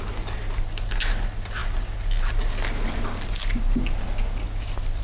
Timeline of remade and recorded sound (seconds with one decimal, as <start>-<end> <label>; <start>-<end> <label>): 0.0-5.0 recorded